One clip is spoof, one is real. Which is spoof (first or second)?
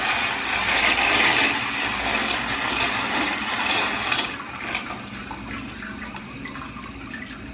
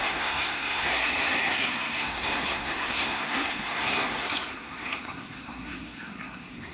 second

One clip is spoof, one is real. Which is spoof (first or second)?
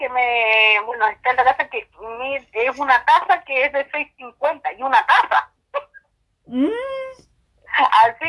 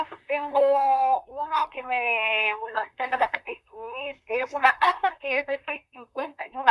second